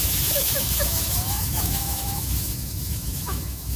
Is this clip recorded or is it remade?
remade